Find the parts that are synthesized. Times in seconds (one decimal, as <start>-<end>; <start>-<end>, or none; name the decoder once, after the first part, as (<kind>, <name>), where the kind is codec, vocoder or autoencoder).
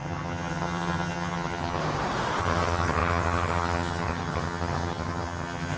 0.0-1.8 (vocoder, HiFi-GAN); 2.4-5.8